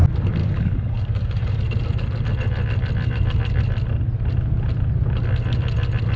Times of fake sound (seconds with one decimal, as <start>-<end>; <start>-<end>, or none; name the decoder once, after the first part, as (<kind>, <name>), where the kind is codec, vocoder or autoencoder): 0.4-1.6 (codec, DAC)